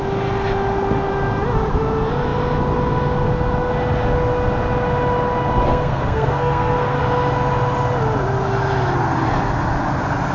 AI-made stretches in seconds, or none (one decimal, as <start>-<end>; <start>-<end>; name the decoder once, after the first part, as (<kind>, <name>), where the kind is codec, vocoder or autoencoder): 5.7-7.0 (codec, SNAC)